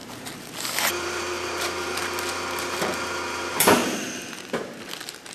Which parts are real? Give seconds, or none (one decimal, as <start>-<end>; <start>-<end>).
0.0-0.9; 2.0-2.6; 3.8-5.3